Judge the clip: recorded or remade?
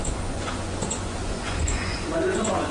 remade